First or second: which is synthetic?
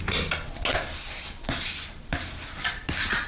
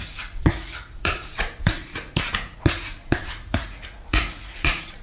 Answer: second